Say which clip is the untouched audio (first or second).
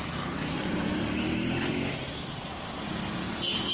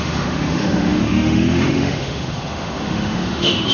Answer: first